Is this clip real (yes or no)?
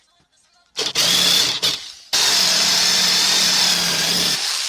yes